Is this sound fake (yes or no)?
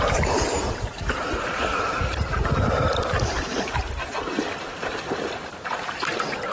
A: yes